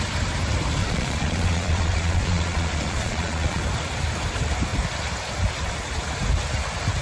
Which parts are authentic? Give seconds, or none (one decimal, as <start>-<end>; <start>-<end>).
0.0-0.8; 3.6-7.0